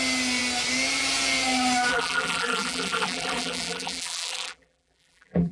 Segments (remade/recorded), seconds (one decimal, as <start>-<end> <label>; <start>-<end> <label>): 0.0-1.9 recorded; 1.9-5.5 remade